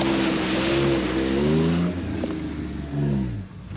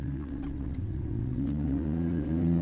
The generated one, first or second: second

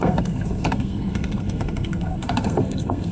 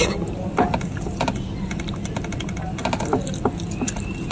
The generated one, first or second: first